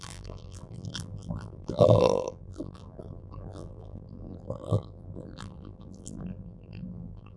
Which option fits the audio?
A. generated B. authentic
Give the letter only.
A